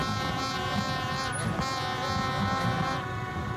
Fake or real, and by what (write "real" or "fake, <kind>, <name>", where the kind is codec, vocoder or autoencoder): real